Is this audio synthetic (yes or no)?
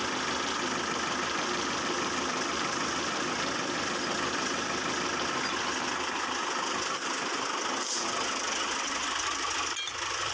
no